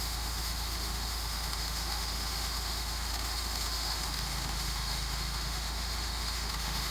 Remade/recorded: remade